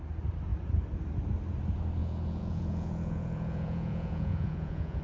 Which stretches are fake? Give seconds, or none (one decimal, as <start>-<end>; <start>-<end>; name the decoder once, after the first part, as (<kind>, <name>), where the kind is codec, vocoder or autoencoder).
2.0-5.0 (vocoder, Vocos)